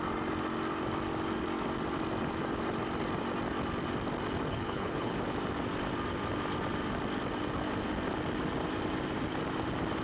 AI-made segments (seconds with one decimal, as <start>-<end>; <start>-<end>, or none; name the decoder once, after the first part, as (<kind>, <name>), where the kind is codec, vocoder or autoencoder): 4.5-5.2 (codec, HILCodec)